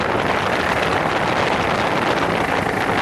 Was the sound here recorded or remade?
recorded